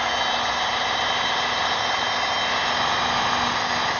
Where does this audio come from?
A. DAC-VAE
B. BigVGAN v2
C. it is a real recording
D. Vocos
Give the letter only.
C